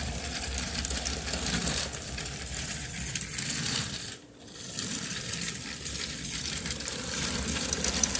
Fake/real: fake